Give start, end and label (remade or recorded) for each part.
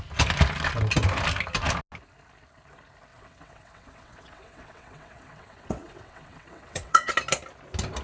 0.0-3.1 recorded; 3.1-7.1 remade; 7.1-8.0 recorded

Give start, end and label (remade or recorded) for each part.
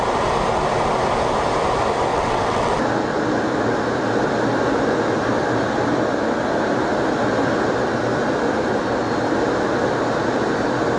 0.0-2.1 recorded; 2.1-2.7 remade; 2.7-11.0 recorded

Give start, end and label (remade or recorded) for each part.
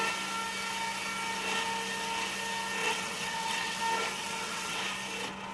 0.0-2.8 recorded; 2.8-3.8 remade; 3.8-4.2 recorded; 4.2-4.8 remade; 4.8-5.5 recorded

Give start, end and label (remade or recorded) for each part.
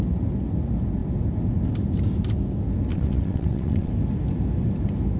0.0-2.9 recorded; 2.9-3.9 remade; 3.9-5.2 recorded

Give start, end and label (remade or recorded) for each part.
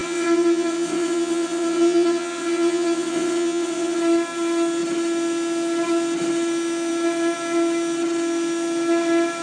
0.0-4.0 remade; 4.0-9.4 recorded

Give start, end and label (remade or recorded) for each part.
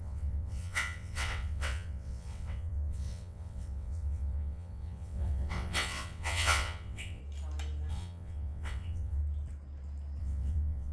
0.0-7.2 remade; 7.2-7.9 recorded; 7.9-9.2 remade; 9.2-10.2 recorded; 10.2-10.9 remade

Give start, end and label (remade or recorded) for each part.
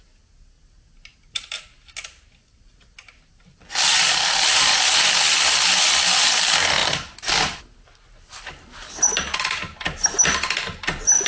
0.0-11.3 recorded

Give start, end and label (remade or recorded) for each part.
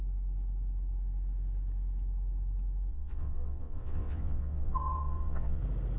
0.0-2.9 recorded; 2.9-5.6 remade; 5.6-6.0 recorded